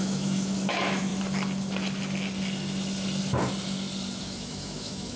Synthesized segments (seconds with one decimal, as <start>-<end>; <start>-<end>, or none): 0.0-1.1; 4.2-5.2